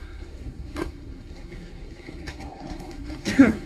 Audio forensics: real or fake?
fake